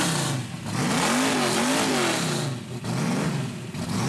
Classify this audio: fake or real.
real